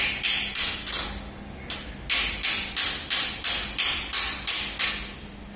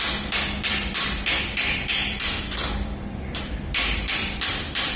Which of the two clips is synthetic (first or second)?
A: second